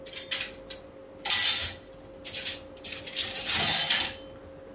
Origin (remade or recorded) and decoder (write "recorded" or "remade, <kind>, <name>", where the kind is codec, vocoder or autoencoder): recorded